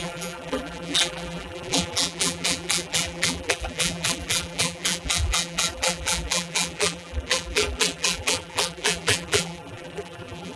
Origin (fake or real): fake